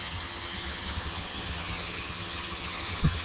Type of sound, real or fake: fake